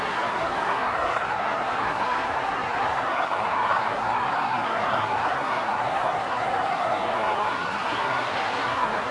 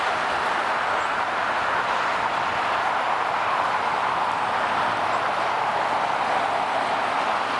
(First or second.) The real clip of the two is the second